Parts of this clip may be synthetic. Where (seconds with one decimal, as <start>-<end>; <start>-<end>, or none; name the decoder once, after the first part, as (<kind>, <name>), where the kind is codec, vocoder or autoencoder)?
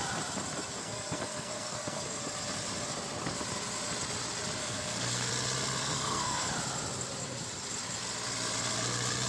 0.8-2.2 (codec, SNAC); 4.6-5.3; 5.8-6.5